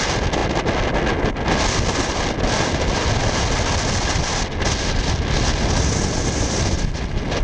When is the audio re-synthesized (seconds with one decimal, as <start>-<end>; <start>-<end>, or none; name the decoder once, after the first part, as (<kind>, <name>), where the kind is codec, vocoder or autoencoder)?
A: none